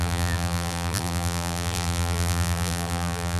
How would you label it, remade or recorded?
remade